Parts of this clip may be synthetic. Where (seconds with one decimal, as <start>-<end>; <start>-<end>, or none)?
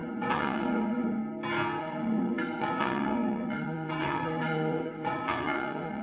0.0-1.2; 1.8-6.0